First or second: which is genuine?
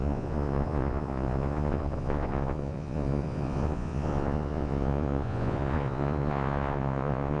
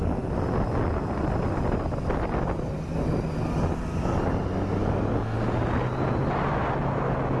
second